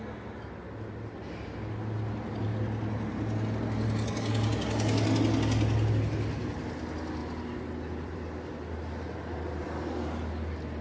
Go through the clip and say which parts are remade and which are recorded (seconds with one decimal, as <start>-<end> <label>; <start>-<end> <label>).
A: 0.0-7.2 recorded; 7.2-10.8 remade